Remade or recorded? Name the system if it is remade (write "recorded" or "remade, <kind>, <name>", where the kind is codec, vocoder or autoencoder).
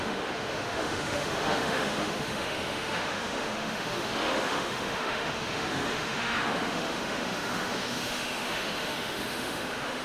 remade, autoencoder, DAC-VAE